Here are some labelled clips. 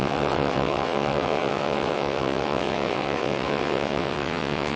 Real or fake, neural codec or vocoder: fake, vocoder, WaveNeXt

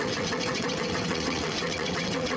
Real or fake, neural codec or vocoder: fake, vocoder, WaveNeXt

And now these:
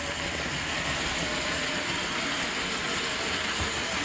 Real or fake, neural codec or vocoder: real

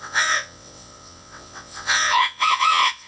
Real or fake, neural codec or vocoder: fake, vocoder, WaveNeXt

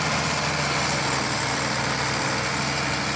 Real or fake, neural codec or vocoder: real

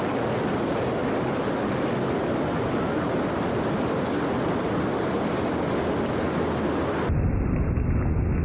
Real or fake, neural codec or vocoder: real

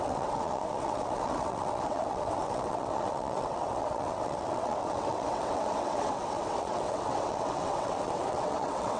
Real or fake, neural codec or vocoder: fake, vocoder, WaveNeXt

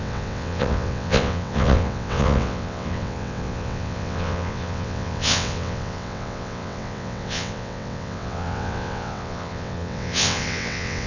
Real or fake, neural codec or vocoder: fake, vocoder, WaveNeXt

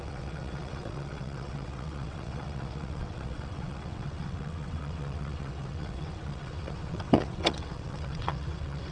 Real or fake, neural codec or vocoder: fake, vocoder, WaveNeXt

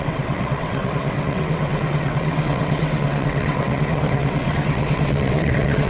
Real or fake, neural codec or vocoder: fake, vocoder, WaveNeXt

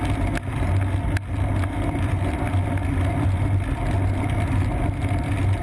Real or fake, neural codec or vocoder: real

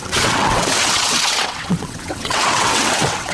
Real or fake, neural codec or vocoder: fake, vocoder, WaveNeXt